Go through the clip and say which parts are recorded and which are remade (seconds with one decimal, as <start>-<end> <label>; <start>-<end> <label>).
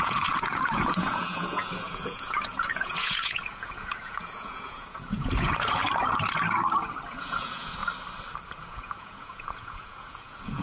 0.0-5.8 remade; 5.8-7.1 recorded; 7.1-7.8 remade; 7.8-8.6 recorded; 8.6-10.6 remade